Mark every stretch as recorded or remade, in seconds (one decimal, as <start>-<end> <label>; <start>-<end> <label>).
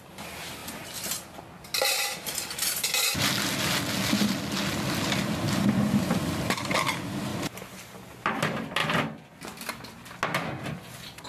0.0-11.3 recorded